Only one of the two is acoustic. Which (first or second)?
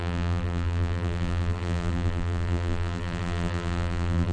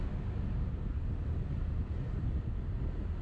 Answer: second